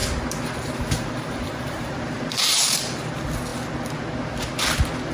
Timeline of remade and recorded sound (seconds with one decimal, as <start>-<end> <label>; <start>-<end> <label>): 0.0-3.1 remade; 3.1-5.1 recorded

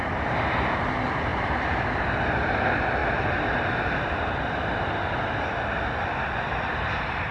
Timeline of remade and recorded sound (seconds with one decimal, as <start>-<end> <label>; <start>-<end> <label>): 0.0-1.3 recorded; 1.3-1.9 remade; 1.9-7.3 recorded